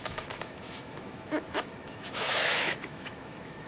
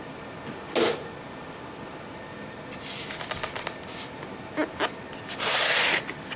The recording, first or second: second